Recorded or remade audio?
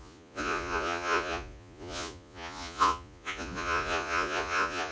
remade